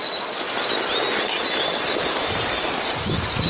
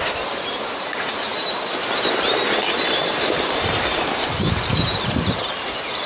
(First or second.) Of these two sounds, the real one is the first